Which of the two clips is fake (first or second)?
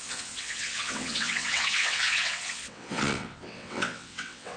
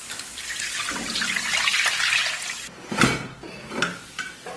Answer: first